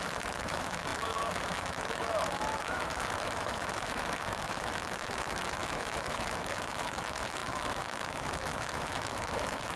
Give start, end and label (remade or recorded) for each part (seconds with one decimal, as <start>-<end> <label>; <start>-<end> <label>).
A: 0.0-9.8 remade

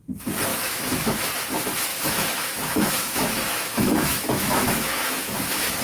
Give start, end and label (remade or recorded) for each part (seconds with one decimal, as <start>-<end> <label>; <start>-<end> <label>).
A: 0.0-0.5 recorded; 0.5-1.2 remade; 1.2-1.9 recorded; 1.9-5.8 remade

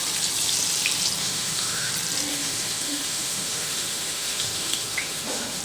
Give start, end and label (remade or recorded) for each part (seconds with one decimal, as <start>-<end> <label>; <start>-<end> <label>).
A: 0.0-1.2 recorded; 1.2-1.9 remade; 1.9-2.3 recorded; 2.3-5.6 remade

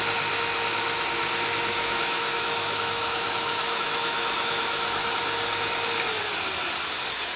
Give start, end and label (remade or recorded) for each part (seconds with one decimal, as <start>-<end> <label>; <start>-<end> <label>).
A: 0.0-1.7 recorded; 1.7-5.1 remade; 5.1-7.4 recorded

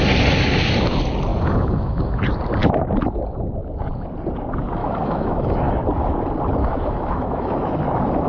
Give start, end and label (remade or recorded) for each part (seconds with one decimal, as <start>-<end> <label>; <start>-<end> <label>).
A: 0.0-1.3 recorded; 1.3-2.1 remade; 2.1-4.8 recorded; 4.8-5.7 remade; 5.7-6.6 recorded; 6.6-7.8 remade; 7.8-8.3 recorded

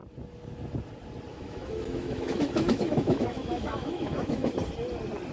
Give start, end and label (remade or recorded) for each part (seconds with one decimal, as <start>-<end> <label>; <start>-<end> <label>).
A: 0.0-1.3 recorded; 1.3-4.5 remade; 4.5-5.3 recorded

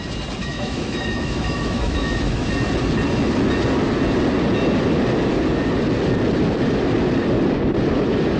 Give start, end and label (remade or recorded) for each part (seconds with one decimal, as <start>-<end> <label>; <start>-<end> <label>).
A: 0.0-0.4 recorded; 0.4-2.5 remade; 2.5-8.4 recorded

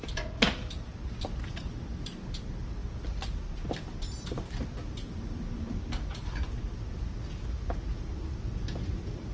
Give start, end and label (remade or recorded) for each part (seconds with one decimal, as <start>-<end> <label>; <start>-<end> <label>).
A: 0.0-9.3 recorded